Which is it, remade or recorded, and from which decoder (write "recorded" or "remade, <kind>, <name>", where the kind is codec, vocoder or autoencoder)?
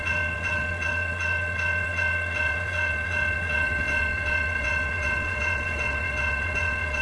remade, vocoder, WaveNeXt